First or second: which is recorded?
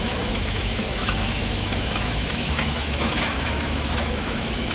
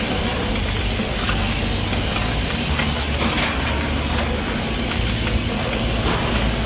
second